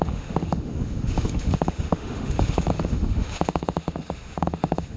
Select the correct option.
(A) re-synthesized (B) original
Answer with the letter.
A